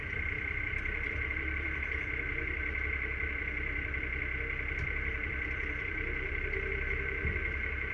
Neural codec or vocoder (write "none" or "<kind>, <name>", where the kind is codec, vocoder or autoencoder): vocoder, BigVGAN v2